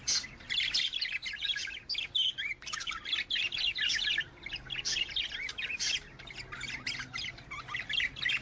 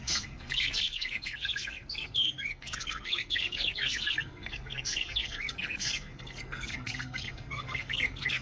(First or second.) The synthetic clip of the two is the second